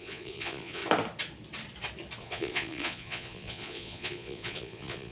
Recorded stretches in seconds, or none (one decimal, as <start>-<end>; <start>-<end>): 0.8-2.2